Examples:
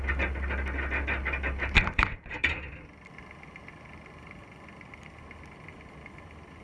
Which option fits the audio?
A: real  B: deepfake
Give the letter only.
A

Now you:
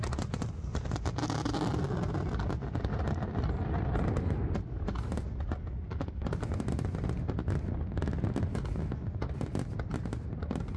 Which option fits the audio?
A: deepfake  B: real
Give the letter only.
B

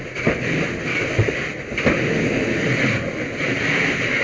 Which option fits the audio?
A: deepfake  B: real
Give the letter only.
B